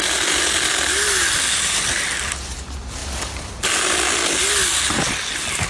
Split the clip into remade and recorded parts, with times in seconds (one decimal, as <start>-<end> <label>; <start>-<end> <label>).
0.0-5.7 recorded